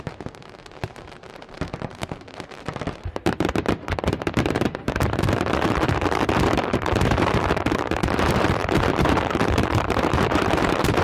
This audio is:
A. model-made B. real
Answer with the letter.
A